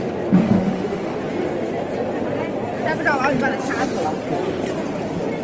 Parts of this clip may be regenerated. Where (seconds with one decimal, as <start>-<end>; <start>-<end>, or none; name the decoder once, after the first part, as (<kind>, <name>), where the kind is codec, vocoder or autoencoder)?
0.4-1.2 (autoencoder, DAC-VAE)